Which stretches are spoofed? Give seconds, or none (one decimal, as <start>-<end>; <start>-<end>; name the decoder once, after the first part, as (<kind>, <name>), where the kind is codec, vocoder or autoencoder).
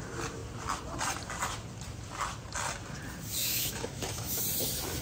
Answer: 3.4-4.4 (autoencoder, DAC-VAE)